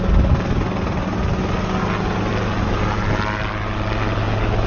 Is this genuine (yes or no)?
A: yes